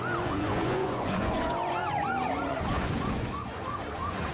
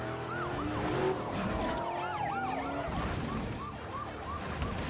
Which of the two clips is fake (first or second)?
first